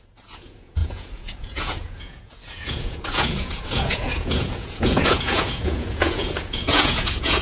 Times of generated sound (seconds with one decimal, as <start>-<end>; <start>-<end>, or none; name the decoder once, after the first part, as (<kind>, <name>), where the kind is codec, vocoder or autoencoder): 0.0-7.4 (vocoder, Vocos)